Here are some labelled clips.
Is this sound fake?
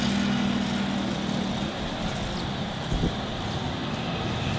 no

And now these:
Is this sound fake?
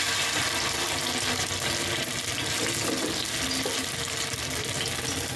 no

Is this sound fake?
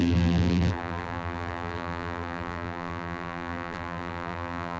yes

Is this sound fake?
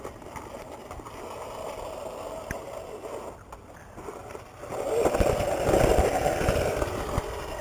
no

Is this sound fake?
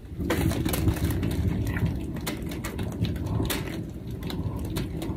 no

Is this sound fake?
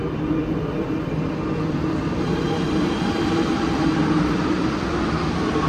yes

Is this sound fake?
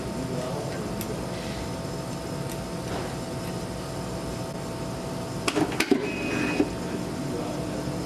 no